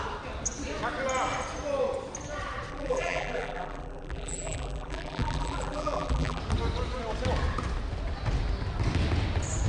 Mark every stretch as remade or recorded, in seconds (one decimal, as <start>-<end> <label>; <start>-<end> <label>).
0.0-2.7 recorded; 2.7-6.4 remade; 6.4-9.7 recorded